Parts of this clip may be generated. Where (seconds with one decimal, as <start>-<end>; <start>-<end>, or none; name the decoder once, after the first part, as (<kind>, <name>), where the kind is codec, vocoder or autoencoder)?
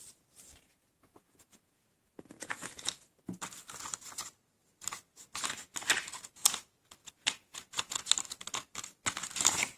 0.7-2.7 (vocoder, Vocos); 7.0-8.1